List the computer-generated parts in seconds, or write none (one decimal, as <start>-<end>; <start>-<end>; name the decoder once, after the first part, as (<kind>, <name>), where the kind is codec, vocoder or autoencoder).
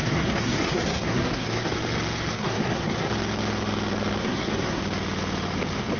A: 0.0-1.7 (codec, SNAC); 2.3-3.1; 4.2-4.8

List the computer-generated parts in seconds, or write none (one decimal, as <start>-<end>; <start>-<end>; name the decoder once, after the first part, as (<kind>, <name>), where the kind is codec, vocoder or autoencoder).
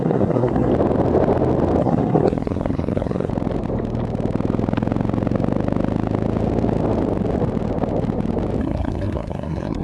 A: 0.0-0.7 (codec, SNAC); 1.8-3.3; 8.6-9.8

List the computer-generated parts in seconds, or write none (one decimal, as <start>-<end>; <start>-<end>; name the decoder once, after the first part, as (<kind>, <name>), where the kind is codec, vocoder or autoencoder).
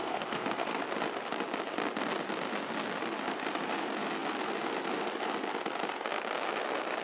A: 0.0-0.8 (codec, SNAC)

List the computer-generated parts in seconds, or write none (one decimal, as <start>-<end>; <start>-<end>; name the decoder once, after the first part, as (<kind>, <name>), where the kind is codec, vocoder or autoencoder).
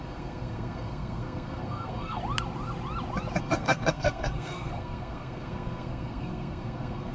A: 0.0-2.2 (codec, SNAC); 3.4-7.1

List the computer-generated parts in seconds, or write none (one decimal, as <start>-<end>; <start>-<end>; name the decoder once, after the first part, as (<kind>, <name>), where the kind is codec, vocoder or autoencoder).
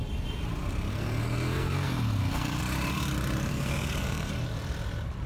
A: 0.9-2.6 (codec, SNAC); 3.5-4.3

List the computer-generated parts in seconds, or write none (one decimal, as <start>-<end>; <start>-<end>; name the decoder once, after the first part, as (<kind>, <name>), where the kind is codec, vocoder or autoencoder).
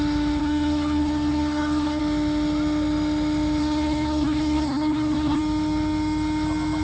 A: 0.4-2.0 (codec, SNAC); 3.6-5.4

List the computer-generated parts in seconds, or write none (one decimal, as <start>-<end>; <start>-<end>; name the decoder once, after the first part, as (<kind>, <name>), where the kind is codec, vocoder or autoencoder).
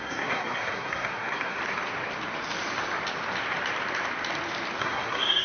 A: 0.0-1.6 (codec, SNAC); 4.8-5.4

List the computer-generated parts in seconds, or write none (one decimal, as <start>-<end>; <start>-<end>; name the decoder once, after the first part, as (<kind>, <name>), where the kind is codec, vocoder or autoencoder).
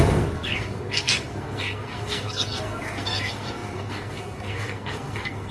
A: 0.0-5.5 (codec, SNAC)